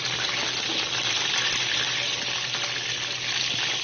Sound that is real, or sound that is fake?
real